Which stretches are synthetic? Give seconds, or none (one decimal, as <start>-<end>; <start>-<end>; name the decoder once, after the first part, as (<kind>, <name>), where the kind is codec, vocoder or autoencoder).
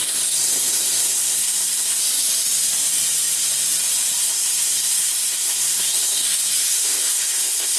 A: 0.0-2.0 (codec, SNAC); 4.2-7.8